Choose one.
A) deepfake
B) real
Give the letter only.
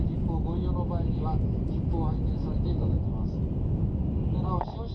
B